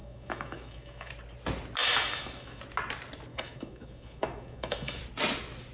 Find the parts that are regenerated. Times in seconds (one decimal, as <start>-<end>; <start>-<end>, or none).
0.0-1.1; 1.8-2.6; 3.3-5.0